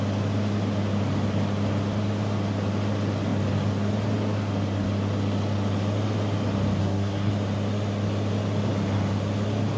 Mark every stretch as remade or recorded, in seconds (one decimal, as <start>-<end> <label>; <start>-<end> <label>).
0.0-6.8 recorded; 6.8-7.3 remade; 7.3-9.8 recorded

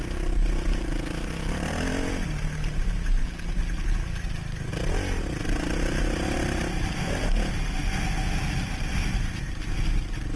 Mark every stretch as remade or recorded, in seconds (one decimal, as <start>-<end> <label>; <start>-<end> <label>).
0.0-10.4 recorded

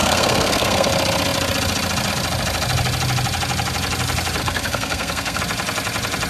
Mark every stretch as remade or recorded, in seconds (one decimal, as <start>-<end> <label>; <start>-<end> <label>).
0.0-0.9 remade; 0.9-4.4 recorded; 4.4-5.4 remade; 5.4-6.3 recorded

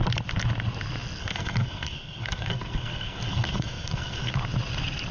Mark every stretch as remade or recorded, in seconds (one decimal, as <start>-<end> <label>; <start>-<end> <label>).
0.0-1.2 recorded; 1.2-4.3 remade; 4.3-5.1 recorded

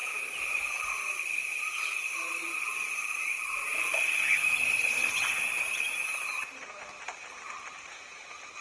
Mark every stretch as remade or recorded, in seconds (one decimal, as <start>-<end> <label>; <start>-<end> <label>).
0.0-8.6 recorded

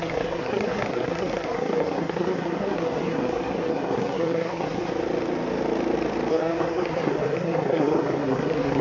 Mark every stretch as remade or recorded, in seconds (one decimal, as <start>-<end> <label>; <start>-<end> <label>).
0.0-4.9 remade; 4.9-6.3 recorded; 6.3-8.8 remade